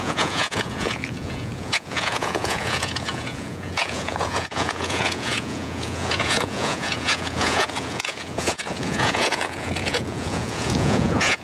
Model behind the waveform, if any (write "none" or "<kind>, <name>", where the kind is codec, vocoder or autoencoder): vocoder, Vocos